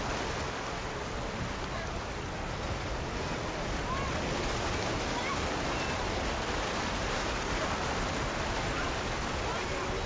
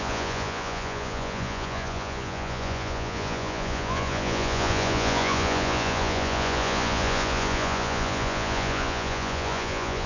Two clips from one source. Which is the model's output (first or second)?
second